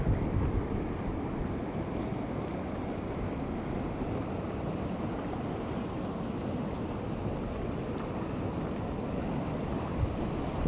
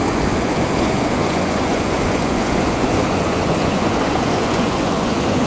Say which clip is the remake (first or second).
second